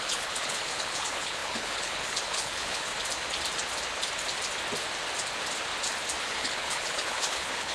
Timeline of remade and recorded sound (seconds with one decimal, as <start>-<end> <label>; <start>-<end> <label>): 0.0-2.9 remade; 2.9-6.2 recorded; 6.2-7.7 remade